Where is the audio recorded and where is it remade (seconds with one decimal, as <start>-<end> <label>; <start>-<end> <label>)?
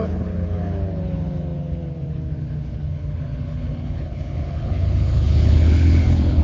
0.0-6.4 remade